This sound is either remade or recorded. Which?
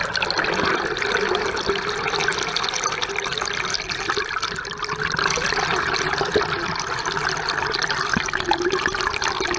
recorded